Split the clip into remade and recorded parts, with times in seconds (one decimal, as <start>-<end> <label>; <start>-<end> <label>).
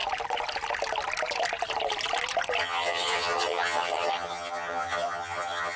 0.0-2.6 recorded; 2.6-5.8 remade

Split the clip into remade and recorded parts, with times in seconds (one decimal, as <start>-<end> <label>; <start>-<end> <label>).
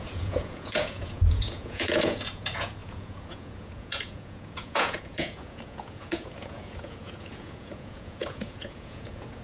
0.0-9.4 remade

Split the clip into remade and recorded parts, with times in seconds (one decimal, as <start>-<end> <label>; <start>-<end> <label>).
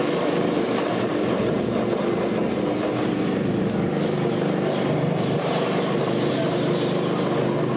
0.0-0.9 recorded; 0.9-1.5 remade; 1.5-2.4 recorded; 2.4-6.6 remade; 6.6-7.8 recorded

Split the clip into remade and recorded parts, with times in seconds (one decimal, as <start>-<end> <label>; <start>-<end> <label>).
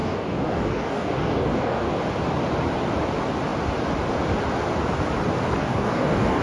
0.0-1.9 remade; 1.9-5.6 recorded; 5.6-6.4 remade